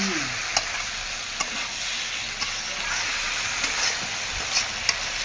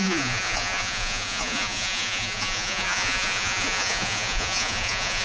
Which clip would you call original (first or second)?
first